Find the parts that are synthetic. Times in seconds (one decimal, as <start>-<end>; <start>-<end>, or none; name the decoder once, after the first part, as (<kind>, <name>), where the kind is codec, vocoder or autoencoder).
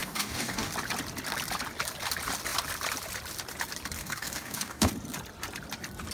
0.0-0.7 (codec, DAC); 4.0-4.9